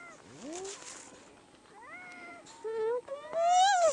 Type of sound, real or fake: real